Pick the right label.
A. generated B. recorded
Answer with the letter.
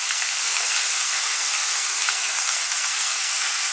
A